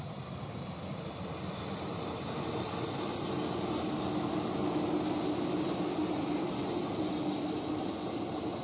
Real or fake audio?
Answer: real